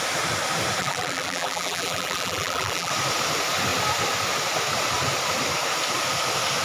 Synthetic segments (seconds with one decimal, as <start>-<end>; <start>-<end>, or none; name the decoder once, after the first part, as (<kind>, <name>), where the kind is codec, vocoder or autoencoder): 0.8-2.9 (vocoder, BigVGAN v2)